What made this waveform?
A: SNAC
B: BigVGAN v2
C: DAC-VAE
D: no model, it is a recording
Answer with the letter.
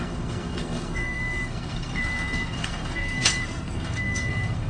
A